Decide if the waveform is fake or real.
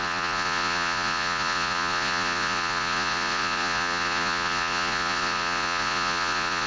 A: fake